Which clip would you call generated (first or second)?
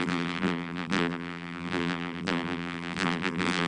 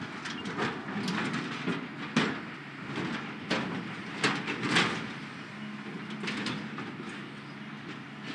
first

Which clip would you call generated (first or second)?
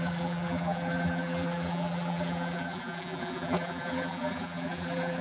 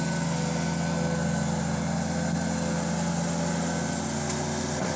first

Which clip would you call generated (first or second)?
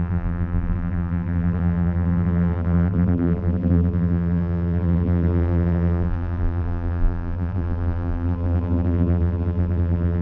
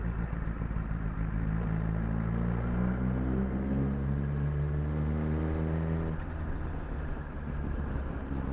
first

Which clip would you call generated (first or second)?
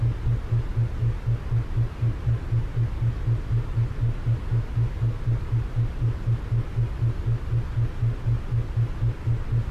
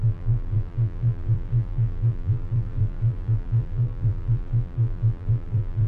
second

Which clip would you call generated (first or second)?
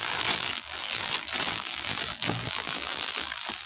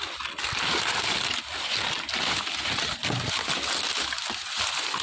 first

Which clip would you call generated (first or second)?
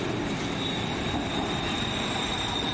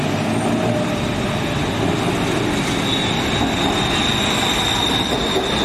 first